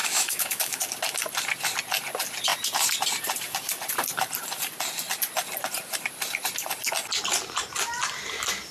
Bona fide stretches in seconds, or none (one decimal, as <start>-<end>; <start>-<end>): 0.8-8.7